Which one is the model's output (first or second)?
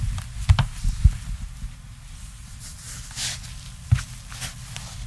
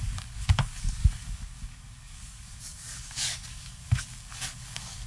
second